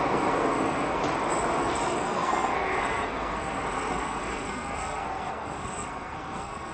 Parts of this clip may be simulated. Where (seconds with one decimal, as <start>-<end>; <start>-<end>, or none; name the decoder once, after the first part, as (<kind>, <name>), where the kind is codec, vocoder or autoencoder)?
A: 0.0-1.0 (codec, SNAC); 1.6-6.7